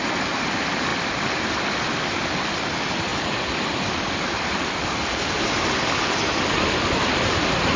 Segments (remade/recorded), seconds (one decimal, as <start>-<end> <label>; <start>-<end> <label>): 0.0-7.8 recorded